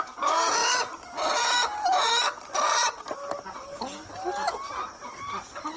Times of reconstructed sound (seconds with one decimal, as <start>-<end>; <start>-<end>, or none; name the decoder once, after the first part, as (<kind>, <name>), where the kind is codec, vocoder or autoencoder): 0.0-0.6 (vocoder, Vocos); 1.3-2.1